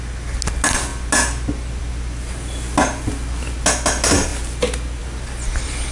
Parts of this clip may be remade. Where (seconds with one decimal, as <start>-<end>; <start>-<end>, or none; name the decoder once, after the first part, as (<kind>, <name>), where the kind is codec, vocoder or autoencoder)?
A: none